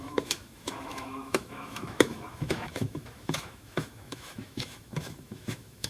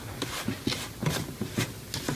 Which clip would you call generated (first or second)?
first